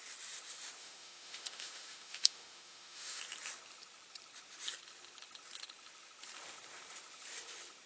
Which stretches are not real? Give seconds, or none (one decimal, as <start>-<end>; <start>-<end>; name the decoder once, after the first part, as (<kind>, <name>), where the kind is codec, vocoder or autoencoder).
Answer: 0.8-3.2 (autoencoder, DAC-VAE)